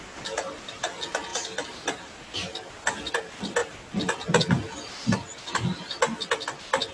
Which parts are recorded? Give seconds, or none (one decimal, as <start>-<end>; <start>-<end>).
0.0-6.9